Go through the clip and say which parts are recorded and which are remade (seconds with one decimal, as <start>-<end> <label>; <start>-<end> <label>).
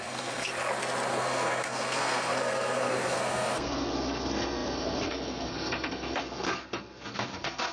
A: 0.0-0.5 remade; 0.5-1.1 recorded; 1.1-7.7 remade